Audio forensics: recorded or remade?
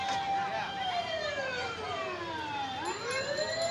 recorded